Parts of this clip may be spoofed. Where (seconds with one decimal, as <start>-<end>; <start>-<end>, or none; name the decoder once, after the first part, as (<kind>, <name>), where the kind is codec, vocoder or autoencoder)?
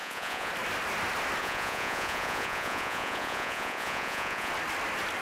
0.0-0.5 (vocoder, Vocos); 1.4-4.5